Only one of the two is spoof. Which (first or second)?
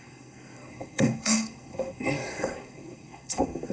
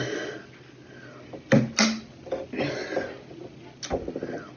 first